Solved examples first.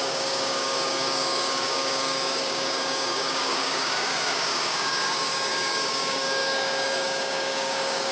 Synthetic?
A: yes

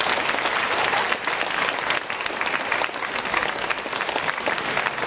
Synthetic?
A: no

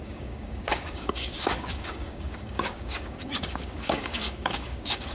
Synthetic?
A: yes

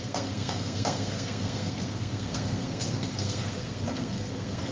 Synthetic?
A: yes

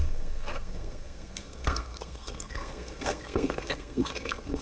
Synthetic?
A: yes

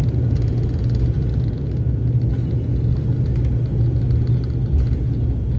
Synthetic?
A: no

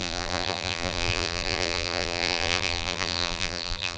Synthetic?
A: yes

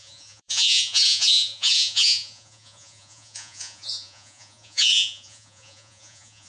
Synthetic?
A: yes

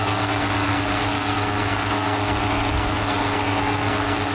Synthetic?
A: yes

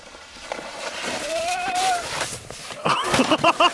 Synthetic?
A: yes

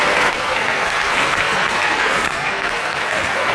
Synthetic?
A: yes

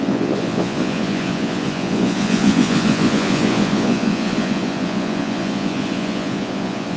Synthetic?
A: yes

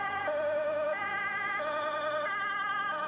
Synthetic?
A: yes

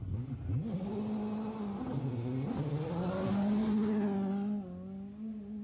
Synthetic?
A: no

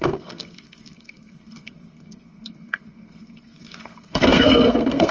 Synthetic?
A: yes